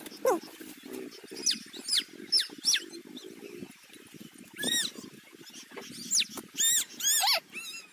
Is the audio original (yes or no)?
yes